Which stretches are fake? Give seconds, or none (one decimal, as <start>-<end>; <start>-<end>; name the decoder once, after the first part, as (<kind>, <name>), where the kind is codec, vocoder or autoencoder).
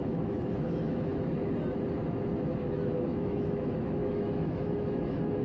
0.0-1.1 (autoencoder, DAC-VAE); 2.6-5.4